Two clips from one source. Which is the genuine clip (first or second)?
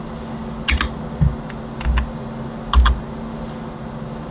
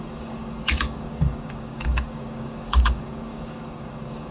first